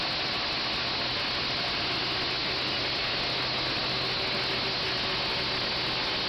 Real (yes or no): yes